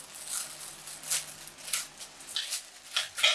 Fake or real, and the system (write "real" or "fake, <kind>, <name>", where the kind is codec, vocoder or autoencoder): real